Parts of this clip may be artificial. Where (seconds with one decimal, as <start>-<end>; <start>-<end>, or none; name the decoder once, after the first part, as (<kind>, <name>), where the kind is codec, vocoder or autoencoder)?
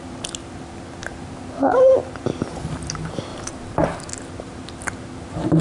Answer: 1.0-1.5 (vocoder, BigVGAN v2); 3.3-4.0